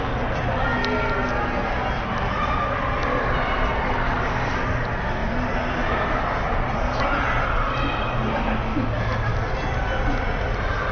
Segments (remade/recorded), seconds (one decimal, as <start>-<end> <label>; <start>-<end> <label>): 0.0-10.9 recorded